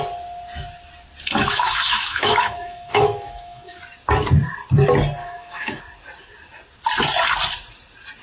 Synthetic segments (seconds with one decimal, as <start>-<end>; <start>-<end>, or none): 1.3-3.8; 5.2-5.8